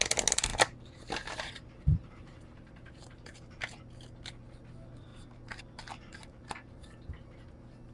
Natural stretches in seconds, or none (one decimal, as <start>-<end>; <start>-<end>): 0.0-0.5; 3.8-5.1; 5.6-6.1; 7.1-7.9